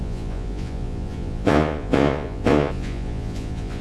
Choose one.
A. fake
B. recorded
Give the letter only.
A